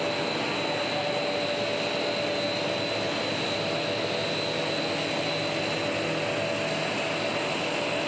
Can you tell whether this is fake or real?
real